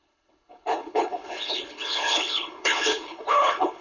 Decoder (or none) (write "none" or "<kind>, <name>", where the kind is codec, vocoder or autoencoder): codec, HILCodec